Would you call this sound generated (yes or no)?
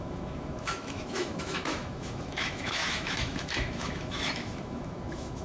yes